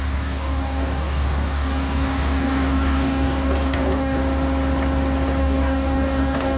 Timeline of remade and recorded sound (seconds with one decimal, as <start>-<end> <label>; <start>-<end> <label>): 0.0-4.2 remade; 4.2-5.4 recorded; 5.4-6.6 remade